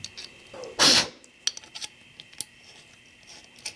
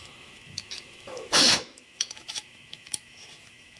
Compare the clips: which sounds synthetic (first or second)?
second